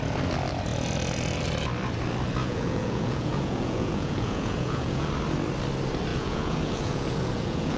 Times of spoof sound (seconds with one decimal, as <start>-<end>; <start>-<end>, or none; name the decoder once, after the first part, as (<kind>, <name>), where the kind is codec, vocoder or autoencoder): 2.4-5.1 (vocoder, Vocos); 6.1-7.8